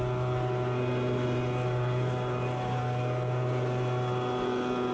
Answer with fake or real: real